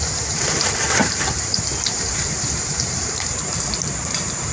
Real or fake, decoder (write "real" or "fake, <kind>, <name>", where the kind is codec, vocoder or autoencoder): fake, vocoder, BigVGAN v2